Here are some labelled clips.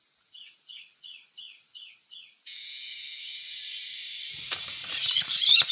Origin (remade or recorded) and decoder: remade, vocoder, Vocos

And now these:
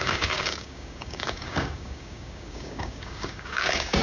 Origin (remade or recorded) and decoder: remade, codec, DAC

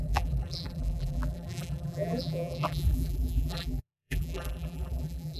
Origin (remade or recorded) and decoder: remade, vocoder, BigVGAN v2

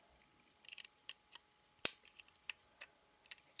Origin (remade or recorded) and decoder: remade, vocoder, BigVGAN v2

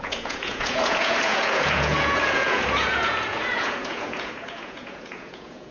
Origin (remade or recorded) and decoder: remade, vocoder, Vocos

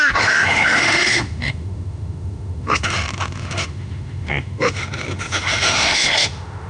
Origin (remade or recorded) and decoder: remade, autoencoder, DAC-VAE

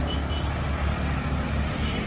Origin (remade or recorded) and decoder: recorded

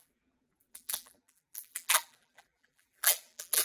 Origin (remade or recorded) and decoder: remade, vocoder, BigVGAN v2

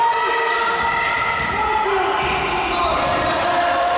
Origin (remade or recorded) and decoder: recorded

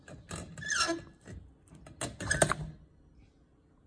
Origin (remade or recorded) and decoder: recorded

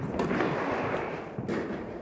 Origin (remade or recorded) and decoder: recorded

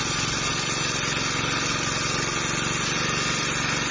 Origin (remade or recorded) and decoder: recorded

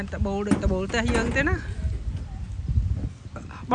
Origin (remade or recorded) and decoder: recorded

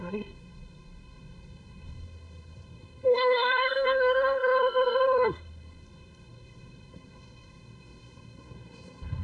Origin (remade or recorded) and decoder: remade, codec, SNAC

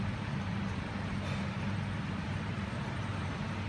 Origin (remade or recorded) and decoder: recorded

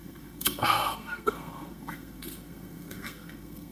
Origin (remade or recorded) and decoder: remade, codec, SNAC